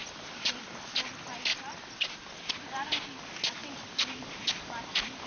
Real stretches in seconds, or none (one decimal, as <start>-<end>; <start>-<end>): 0.6-1.5; 2.5-3.6